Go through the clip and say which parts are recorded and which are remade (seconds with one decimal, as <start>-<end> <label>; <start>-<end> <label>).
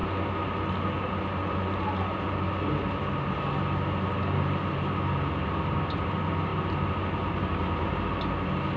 0.0-8.8 recorded